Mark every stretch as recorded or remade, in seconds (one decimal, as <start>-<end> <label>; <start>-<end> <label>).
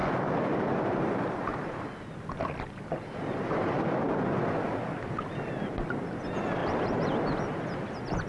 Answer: 0.0-8.3 recorded